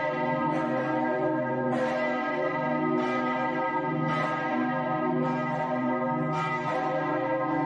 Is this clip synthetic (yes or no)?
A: yes